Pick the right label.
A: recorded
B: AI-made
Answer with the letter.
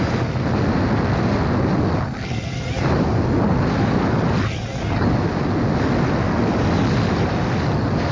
A